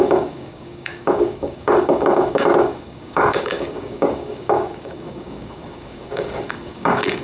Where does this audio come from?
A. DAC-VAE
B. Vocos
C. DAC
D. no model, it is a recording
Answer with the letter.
C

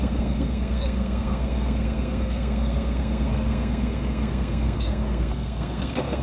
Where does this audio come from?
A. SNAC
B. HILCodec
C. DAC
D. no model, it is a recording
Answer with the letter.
A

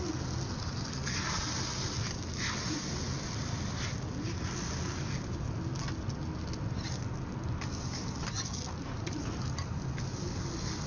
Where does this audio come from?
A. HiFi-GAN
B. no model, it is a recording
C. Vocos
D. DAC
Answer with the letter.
B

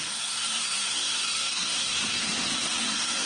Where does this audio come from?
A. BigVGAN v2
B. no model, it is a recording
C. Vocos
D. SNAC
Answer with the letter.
D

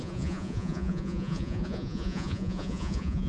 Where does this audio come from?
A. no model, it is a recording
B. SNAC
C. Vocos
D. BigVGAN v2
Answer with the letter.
C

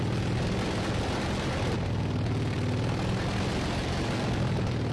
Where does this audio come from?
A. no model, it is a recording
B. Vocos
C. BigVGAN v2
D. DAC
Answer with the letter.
A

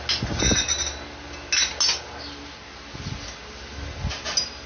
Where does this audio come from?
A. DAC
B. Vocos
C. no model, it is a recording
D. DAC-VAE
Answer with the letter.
C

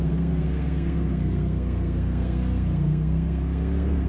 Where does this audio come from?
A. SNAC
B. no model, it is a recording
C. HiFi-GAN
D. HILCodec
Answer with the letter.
A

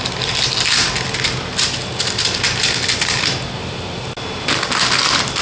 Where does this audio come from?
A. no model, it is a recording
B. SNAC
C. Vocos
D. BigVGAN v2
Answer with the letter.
A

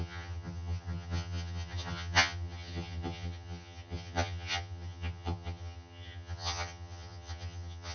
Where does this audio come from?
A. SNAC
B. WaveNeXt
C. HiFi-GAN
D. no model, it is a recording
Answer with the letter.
C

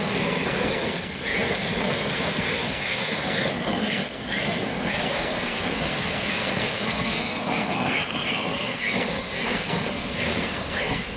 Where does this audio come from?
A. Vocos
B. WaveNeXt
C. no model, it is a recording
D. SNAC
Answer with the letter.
D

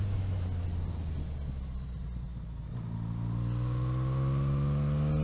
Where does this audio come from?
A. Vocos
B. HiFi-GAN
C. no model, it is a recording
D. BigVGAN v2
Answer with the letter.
C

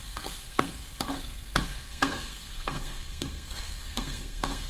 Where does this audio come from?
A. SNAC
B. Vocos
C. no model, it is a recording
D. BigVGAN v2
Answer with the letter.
A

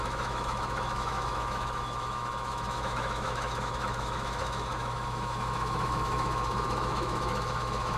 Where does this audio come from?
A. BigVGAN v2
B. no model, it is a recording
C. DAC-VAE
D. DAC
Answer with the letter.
C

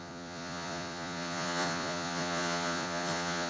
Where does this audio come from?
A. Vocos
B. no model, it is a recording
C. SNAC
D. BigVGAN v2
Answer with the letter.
A